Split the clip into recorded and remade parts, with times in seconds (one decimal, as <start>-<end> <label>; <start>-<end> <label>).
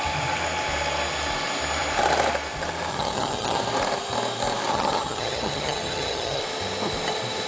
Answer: 0.0-2.9 recorded; 2.9-3.6 remade; 3.6-4.7 recorded; 4.7-6.4 remade; 6.4-7.5 recorded